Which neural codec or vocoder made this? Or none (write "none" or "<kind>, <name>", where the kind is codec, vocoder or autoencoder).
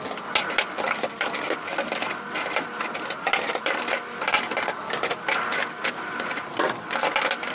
none